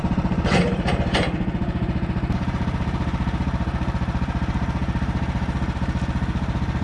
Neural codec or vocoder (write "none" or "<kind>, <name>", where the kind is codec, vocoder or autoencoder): vocoder, BigVGAN v2